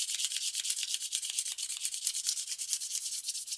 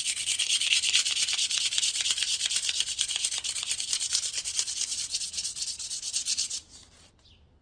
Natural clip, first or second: first